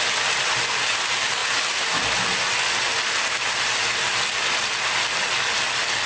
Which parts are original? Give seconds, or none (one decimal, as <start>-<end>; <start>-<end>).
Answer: 0.0-6.1